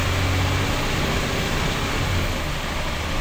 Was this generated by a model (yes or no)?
no